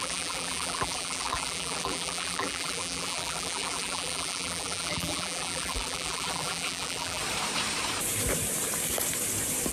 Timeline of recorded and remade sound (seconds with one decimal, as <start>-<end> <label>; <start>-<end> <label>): 0.0-7.2 remade; 7.2-9.7 recorded